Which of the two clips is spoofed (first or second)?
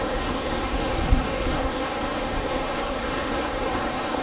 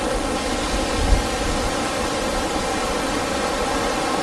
first